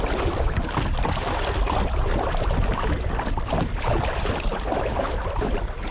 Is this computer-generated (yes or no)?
no